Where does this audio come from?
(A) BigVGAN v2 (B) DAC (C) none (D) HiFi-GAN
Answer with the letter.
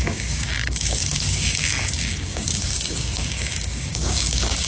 B